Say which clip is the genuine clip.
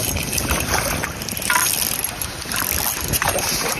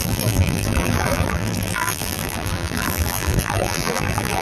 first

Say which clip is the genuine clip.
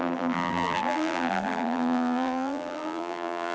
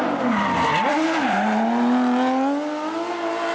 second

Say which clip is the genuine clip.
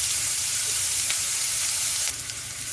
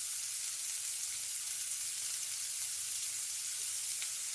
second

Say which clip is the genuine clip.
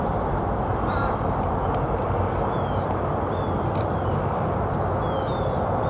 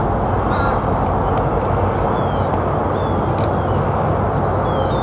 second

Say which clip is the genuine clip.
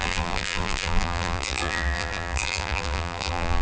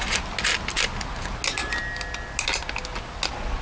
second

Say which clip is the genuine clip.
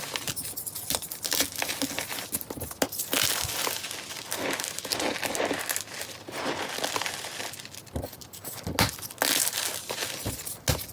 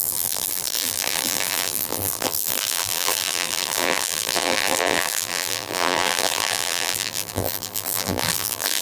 first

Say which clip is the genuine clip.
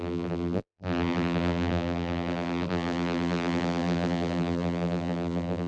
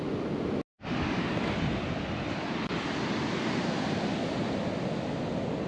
second